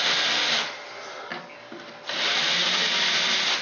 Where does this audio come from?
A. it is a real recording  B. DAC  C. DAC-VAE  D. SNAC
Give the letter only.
A